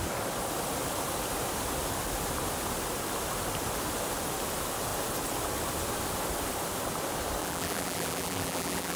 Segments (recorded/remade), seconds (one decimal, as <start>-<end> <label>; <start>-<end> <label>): 0.0-7.4 recorded; 7.4-9.0 remade